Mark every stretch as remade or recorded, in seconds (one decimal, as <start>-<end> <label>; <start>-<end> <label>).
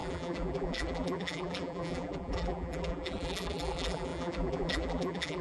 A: 0.0-5.4 remade